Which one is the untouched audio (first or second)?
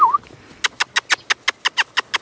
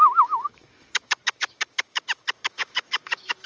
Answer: first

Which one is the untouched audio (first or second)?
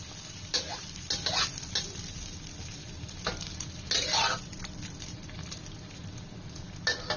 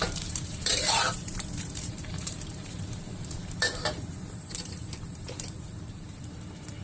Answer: first